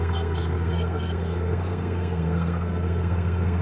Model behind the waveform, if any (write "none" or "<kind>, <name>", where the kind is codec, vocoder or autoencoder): codec, SNAC